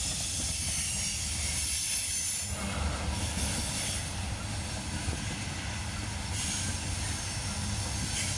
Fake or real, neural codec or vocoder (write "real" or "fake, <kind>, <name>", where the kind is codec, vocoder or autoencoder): real